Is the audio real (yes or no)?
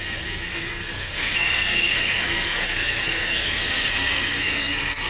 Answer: no